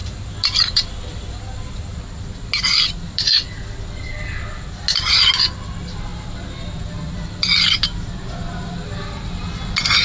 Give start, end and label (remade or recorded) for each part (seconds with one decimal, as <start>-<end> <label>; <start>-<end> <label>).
0.0-10.0 recorded